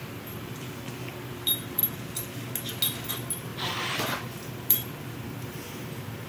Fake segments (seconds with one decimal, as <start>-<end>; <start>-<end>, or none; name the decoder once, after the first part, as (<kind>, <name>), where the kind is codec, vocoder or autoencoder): 0.0-1.8 (vocoder, BigVGAN v2); 3.1-6.3

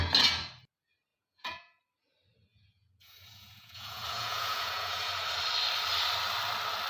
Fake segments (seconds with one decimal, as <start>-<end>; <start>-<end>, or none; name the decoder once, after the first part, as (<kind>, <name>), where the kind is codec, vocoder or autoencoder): 1.1-1.8 (vocoder, Vocos); 2.5-5.3

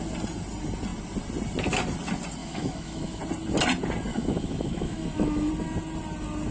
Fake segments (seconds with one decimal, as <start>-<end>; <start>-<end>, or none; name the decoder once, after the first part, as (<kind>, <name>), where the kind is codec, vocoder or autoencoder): 2.4-3.2 (autoencoder, DAC-VAE); 4.1-5.5

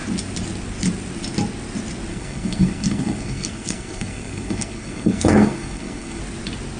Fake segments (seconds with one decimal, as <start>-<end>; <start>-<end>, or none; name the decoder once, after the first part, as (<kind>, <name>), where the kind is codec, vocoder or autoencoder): 2.1-6.2 (codec, SNAC)